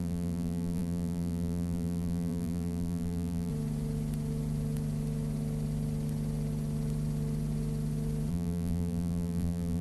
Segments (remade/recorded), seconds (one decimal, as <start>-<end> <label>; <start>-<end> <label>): 0.0-3.5 remade; 3.5-8.3 recorded; 8.3-9.8 remade